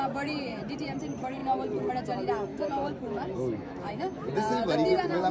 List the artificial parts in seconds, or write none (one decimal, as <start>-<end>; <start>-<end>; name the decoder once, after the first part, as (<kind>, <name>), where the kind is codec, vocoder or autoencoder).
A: 2.5-4.3 (autoencoder, DAC-VAE)